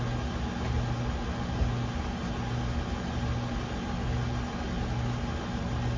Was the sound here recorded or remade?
recorded